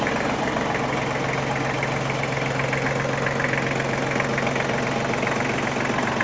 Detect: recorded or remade recorded